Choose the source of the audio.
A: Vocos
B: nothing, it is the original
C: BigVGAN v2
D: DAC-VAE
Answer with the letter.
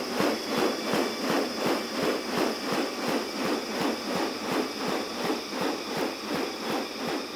B